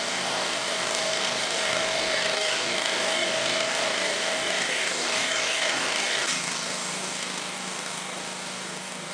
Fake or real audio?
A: fake